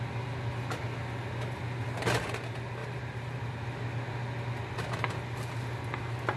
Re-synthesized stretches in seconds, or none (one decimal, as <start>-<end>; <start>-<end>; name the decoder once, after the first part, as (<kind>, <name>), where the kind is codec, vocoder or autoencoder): 2.8-3.5 (vocoder, BigVGAN v2)